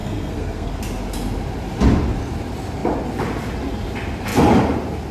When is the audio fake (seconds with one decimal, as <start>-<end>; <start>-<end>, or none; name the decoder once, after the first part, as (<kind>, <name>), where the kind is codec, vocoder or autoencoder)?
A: 0.0-0.8 (codec, SNAC)